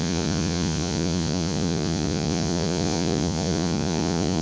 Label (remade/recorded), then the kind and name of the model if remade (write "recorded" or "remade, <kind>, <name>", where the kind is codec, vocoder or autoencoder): remade, vocoder, Vocos